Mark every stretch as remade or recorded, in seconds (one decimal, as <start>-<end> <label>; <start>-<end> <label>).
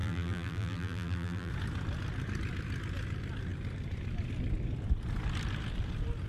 0.0-1.5 remade; 1.5-6.3 recorded